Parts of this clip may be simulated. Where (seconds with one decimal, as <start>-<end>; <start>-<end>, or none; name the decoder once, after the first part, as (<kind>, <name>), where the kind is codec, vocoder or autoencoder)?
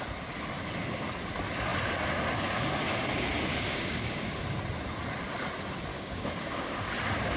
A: 3.5-4.3 (codec, DAC); 5.9-6.9